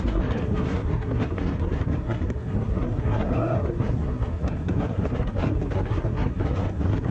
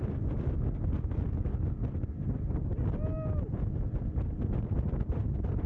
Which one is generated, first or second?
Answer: first